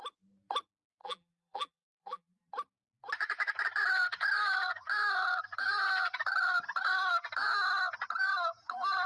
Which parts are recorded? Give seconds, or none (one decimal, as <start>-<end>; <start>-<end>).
0.0-1.0; 2.5-9.1